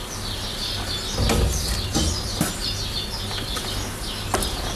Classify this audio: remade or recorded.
recorded